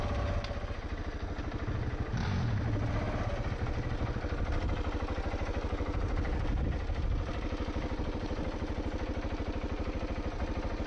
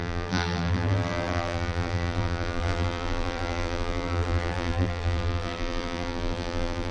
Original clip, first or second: first